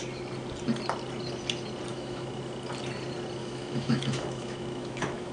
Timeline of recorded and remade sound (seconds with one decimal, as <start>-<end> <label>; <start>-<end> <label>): 0.0-1.9 recorded; 1.9-2.4 remade; 2.4-3.4 recorded; 3.4-5.3 remade